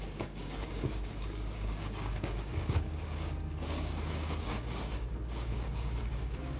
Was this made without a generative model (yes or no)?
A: no